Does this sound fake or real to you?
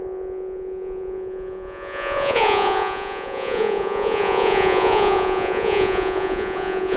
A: fake